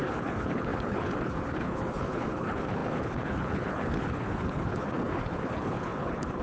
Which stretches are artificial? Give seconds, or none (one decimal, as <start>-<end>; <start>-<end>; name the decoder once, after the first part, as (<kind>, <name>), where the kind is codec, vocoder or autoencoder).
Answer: 0.0-6.4 (codec, HILCodec)